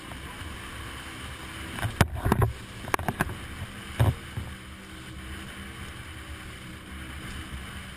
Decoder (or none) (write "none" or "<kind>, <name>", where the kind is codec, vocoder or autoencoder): none